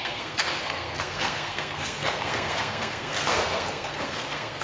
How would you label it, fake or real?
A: fake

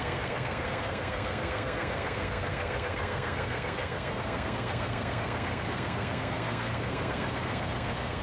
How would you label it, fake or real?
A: fake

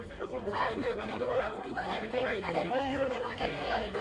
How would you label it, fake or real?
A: fake